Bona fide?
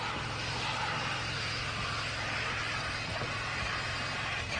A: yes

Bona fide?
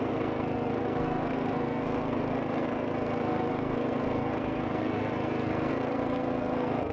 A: no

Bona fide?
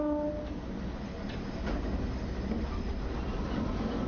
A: yes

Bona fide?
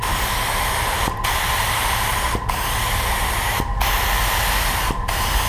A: yes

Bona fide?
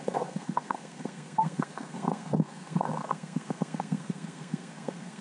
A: no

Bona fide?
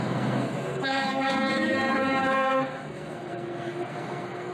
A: no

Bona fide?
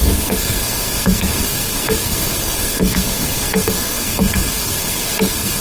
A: no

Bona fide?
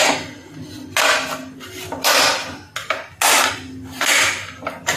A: yes